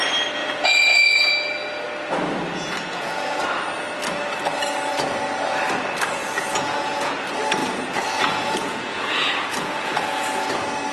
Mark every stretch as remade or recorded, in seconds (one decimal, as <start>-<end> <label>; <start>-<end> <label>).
0.0-0.4 recorded; 0.4-1.3 remade; 1.3-2.5 recorded; 2.5-3.4 remade; 3.4-6.2 recorded; 6.2-7.1 remade; 7.1-7.6 recorded; 7.6-10.5 remade; 10.5-10.9 recorded